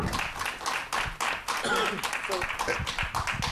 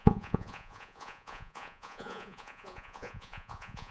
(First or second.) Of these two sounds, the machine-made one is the second